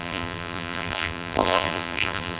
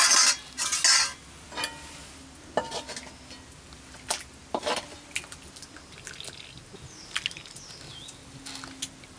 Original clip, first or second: second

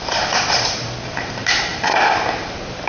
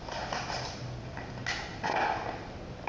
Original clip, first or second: second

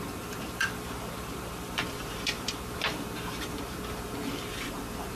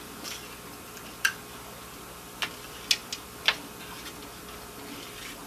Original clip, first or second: second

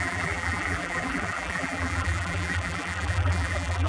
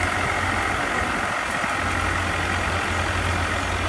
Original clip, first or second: second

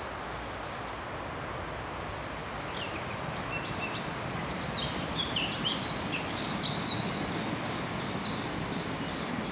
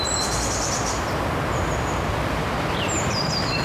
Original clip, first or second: first